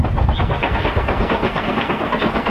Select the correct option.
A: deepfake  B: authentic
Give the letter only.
A